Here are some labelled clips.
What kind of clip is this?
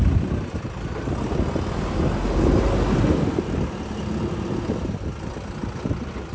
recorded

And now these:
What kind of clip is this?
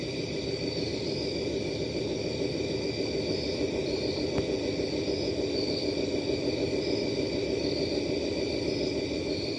recorded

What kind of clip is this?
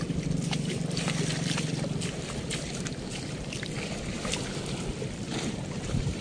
remade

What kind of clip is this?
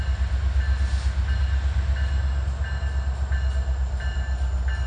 recorded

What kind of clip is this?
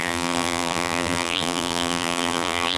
remade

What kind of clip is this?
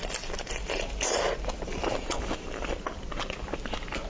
recorded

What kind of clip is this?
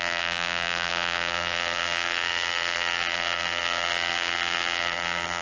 remade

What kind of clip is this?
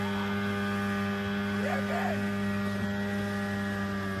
recorded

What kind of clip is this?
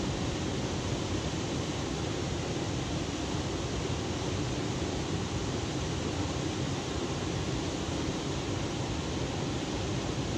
recorded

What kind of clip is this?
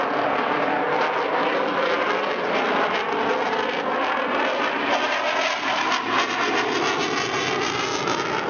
recorded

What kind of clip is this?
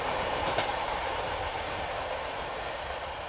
remade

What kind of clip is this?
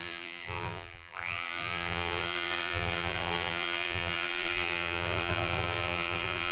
remade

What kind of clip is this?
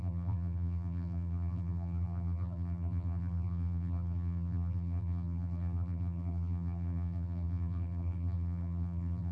remade